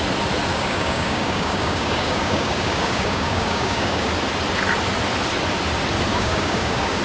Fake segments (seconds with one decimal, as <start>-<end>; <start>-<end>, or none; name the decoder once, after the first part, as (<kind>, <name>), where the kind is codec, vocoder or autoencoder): 0.5-4.1 (codec, DAC); 6.1-7.0